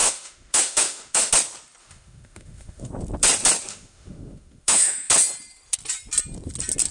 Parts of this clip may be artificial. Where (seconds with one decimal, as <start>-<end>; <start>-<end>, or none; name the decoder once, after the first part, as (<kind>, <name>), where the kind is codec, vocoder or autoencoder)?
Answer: 0.0-1.3 (autoencoder, DAC-VAE); 1.8-2.9; 3.7-5.1